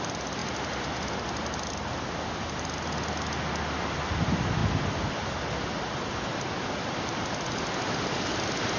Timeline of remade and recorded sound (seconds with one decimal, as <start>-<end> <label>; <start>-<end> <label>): 0.0-8.8 recorded